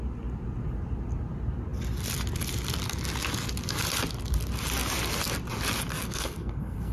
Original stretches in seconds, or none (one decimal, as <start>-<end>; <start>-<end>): 0.0-5.9